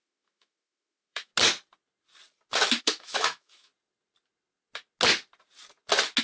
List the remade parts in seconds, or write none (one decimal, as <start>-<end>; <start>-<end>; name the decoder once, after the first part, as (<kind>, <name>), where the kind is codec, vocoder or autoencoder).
0.0-1.3 (autoencoder, DAC-VAE); 2.8-3.7

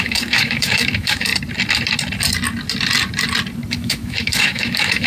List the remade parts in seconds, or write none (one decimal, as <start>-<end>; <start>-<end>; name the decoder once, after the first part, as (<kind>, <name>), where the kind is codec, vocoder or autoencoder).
0.0-1.3 (autoencoder, DAC-VAE); 3.7-5.1

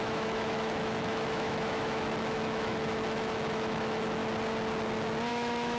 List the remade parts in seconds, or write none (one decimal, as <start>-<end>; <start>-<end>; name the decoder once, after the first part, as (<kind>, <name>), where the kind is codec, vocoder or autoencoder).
0.0-4.2 (autoencoder, DAC-VAE); 5.3-5.8

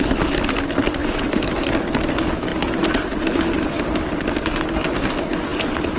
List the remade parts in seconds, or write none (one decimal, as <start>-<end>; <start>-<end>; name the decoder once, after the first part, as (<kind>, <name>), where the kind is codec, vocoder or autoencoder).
1.0-1.7 (autoencoder, DAC-VAE)